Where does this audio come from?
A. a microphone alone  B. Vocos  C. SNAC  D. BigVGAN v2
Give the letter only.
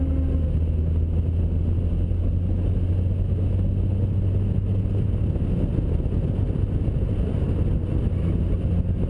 A